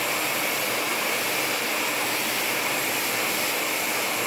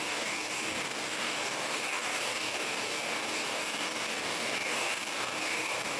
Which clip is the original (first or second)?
first